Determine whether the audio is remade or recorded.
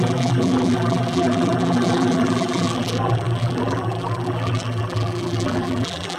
remade